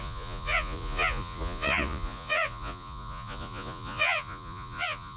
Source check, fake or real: fake